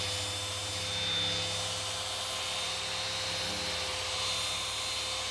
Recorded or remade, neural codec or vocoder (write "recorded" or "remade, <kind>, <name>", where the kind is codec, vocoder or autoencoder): recorded